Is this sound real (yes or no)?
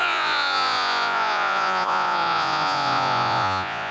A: no